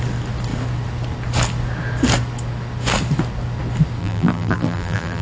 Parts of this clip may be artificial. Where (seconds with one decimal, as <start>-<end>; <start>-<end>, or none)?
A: 4.0-5.2